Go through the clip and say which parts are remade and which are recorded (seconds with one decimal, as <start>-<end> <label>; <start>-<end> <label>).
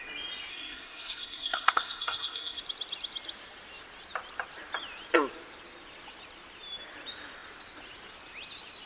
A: 0.0-0.5 recorded; 0.5-2.6 remade; 2.6-8.9 recorded